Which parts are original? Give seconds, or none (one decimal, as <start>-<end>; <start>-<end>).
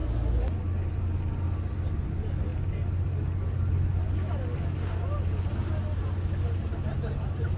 0.0-7.6